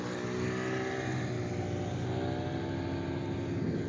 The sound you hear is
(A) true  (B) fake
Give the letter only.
A